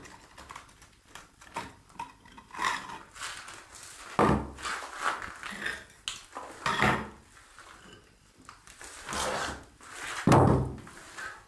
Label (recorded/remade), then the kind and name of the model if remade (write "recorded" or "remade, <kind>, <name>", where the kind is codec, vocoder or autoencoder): recorded